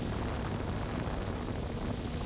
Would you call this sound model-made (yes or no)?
no